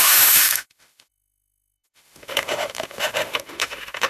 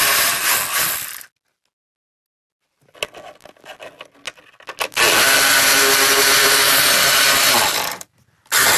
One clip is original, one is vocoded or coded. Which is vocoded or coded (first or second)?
first